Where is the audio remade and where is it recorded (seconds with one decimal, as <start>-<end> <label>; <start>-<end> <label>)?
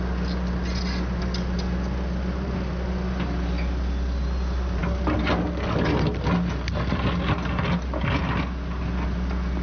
0.0-9.6 recorded